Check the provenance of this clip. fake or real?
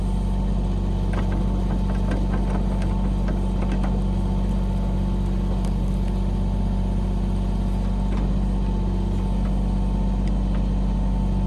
real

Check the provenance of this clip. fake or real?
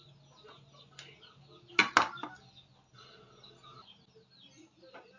real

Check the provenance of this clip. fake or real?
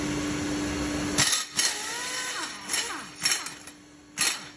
real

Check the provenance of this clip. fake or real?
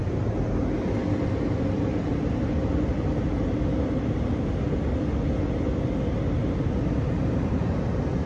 real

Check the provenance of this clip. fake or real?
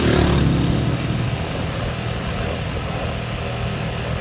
real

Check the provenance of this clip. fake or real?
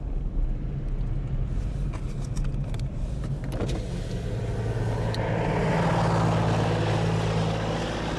real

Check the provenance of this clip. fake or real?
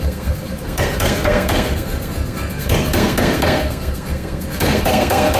fake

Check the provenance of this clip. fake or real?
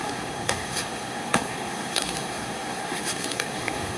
fake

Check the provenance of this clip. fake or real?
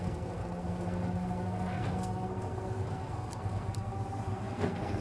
fake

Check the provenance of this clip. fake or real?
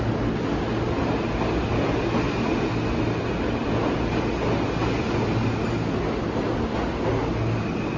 real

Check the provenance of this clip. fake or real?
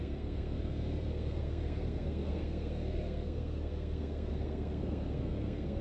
fake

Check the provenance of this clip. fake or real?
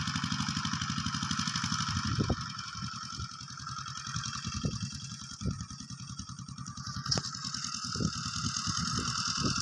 real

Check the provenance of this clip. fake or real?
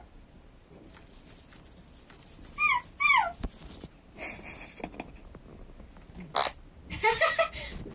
real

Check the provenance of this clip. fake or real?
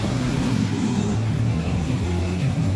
fake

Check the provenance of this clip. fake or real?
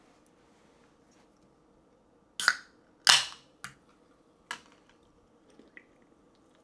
real